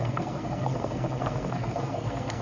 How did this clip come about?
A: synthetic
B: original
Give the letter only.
A